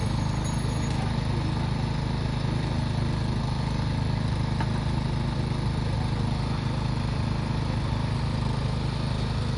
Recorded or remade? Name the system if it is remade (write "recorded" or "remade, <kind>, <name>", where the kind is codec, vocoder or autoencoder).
recorded